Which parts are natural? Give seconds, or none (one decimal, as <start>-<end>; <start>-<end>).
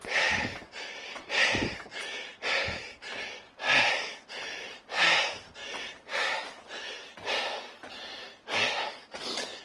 0.0-9.6